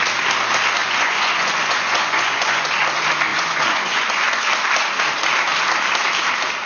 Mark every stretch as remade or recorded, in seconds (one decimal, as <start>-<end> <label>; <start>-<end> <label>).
0.0-0.8 recorded; 0.8-2.7 remade; 2.7-3.3 recorded; 3.3-4.4 remade; 4.4-6.7 recorded